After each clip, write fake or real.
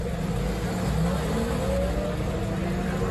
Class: real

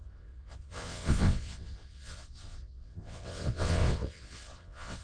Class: fake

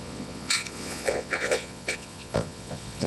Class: fake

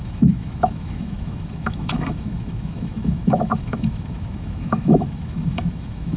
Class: fake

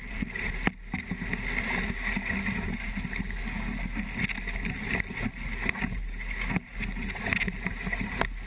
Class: real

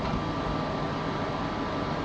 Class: real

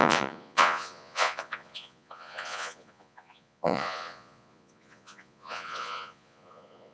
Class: fake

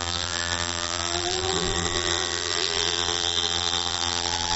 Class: fake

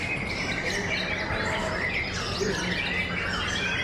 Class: real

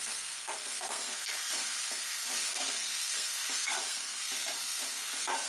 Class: fake